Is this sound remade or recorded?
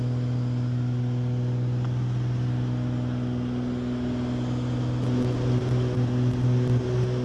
recorded